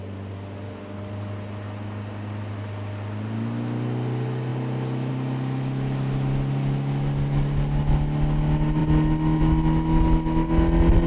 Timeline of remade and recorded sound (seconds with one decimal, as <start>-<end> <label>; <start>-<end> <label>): 0.0-11.1 recorded